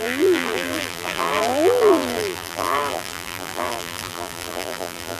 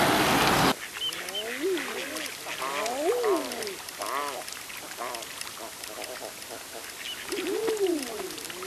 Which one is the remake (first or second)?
first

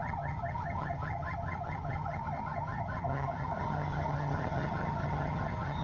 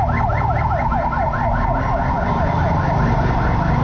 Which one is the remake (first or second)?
first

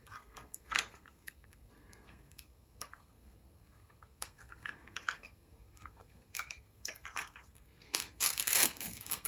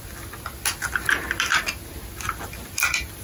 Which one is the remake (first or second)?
first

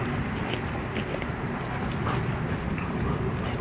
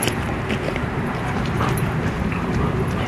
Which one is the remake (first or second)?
second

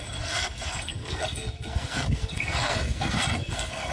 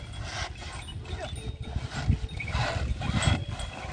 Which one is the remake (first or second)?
first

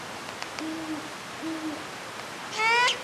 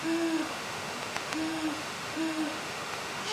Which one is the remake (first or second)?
second